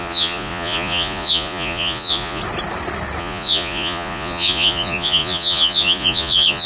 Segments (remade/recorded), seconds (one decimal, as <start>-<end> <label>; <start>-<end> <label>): 0.0-2.4 remade; 2.4-3.2 recorded; 3.2-6.7 remade